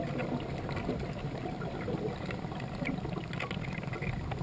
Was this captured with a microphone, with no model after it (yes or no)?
yes